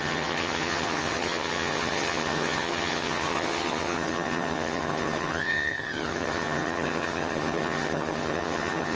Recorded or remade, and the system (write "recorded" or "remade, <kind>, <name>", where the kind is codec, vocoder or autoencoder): remade, vocoder, HiFi-GAN